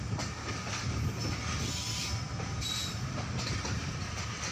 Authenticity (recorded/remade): recorded